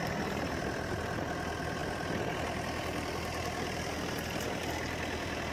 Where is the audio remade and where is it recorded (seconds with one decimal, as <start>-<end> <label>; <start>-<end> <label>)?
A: 0.0-5.5 recorded